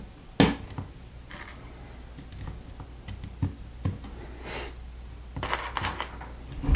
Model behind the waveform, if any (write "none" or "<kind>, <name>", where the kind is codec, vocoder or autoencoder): none